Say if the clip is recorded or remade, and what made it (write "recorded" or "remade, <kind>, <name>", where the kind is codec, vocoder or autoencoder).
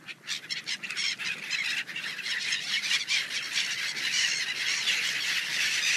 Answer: remade, vocoder, BigVGAN v2